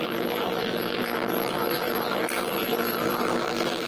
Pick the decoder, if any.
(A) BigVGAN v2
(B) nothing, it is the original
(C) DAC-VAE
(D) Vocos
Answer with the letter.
A